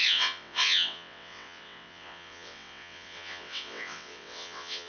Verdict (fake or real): fake